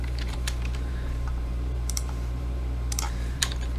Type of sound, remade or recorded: remade